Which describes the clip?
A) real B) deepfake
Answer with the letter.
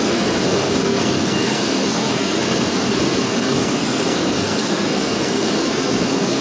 B